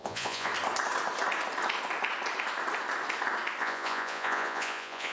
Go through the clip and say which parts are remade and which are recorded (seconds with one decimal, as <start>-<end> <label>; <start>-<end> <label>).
0.0-0.5 remade; 0.5-3.6 recorded; 3.6-5.1 remade